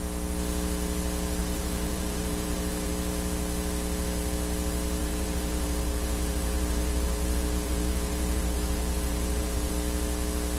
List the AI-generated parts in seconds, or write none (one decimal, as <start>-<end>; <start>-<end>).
1.4-2.9; 5.0-9.7

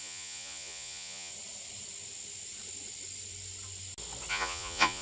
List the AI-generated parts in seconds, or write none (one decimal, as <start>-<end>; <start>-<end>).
0.0-1.3; 4.3-5.0

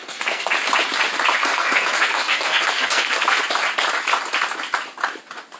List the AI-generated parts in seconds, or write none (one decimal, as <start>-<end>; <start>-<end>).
0.0-0.5; 1.4-3.4

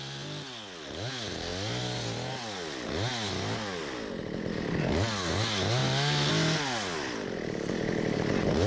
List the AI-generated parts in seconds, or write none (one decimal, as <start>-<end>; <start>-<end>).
none

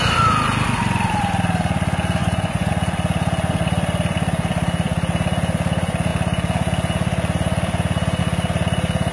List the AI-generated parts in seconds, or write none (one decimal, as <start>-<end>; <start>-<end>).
2.2-2.7